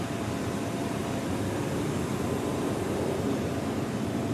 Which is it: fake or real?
real